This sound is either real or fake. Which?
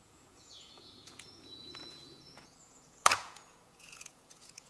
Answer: fake